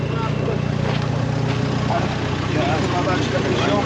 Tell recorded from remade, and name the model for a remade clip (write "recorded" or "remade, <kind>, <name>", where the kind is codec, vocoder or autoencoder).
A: recorded